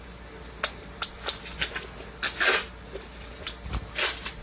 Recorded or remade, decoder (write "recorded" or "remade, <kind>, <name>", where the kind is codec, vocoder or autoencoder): recorded